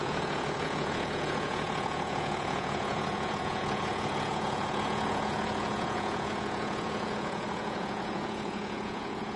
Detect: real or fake fake